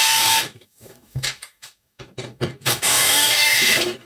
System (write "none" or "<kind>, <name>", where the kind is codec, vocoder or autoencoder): codec, DAC